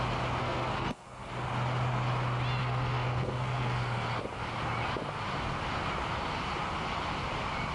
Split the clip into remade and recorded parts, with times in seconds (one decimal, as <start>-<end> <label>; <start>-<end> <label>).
0.0-0.4 recorded; 0.4-1.3 remade; 1.3-2.6 recorded; 2.6-4.2 remade; 4.2-7.7 recorded